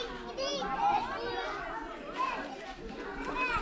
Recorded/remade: recorded